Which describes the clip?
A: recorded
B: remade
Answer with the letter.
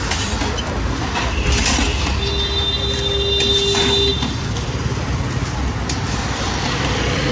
A